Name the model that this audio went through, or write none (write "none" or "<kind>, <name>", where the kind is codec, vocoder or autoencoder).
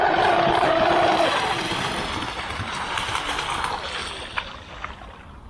none